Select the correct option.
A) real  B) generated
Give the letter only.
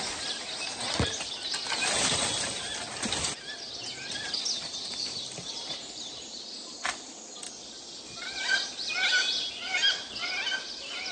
A